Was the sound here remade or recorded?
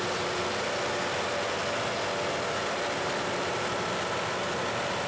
recorded